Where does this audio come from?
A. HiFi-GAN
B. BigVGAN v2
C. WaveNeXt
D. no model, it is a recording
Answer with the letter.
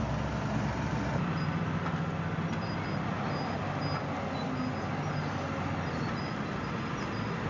D